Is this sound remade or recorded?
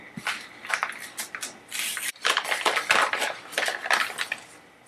recorded